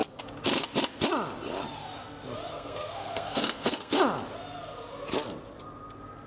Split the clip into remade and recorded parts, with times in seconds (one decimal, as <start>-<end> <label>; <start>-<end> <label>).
0.0-2.5 recorded; 2.5-4.0 remade; 4.0-6.3 recorded